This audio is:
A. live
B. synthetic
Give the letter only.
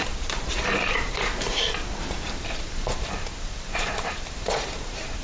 B